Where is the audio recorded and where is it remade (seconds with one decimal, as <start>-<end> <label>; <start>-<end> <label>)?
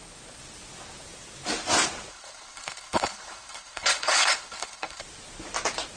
0.0-2.1 recorded; 2.1-5.0 remade; 5.0-6.0 recorded